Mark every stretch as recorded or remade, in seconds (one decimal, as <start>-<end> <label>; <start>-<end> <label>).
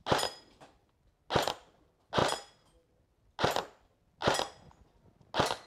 0.0-5.7 recorded